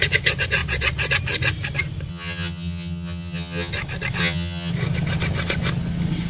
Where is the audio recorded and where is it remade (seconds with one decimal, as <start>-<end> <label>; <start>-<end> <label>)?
0.0-2.1 recorded; 2.1-3.7 remade; 3.7-4.2 recorded; 4.2-4.7 remade; 4.7-6.3 recorded